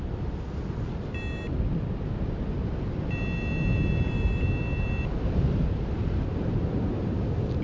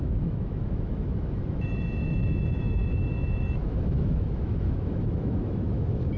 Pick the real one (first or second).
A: first